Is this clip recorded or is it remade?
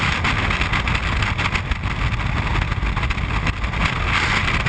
recorded